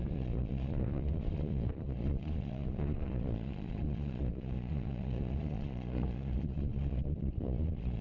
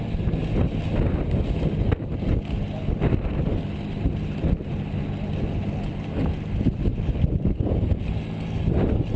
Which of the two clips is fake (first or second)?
first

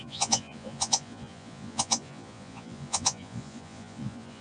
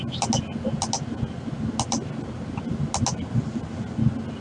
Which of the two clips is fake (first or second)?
first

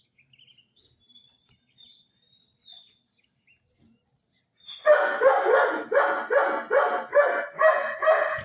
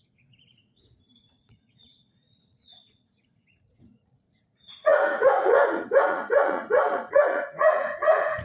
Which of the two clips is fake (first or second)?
second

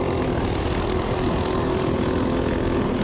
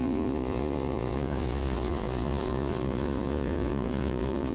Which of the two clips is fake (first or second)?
second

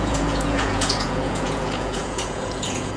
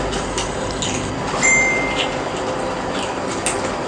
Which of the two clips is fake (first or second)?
first